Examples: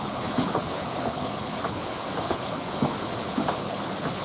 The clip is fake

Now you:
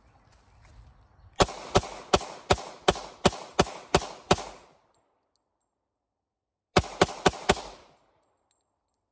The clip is real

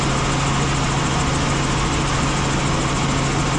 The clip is real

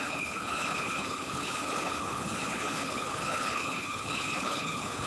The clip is fake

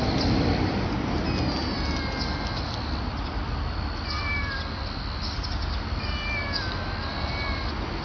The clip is real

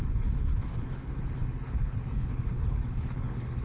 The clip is fake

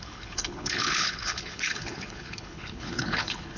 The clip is fake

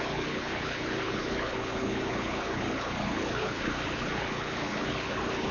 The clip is fake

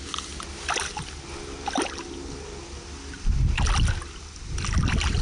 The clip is real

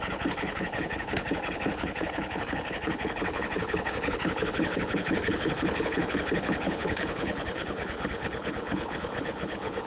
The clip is fake